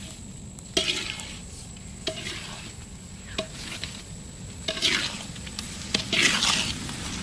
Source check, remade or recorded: recorded